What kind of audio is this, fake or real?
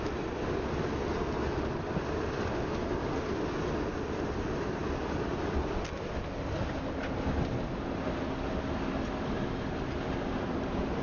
real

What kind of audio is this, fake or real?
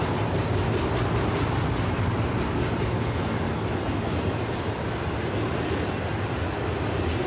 real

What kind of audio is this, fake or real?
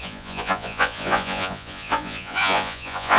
fake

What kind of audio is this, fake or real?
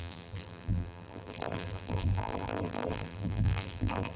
fake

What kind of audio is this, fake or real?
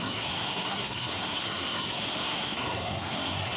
fake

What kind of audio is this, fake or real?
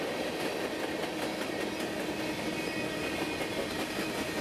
real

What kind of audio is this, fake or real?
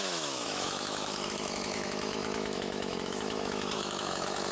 fake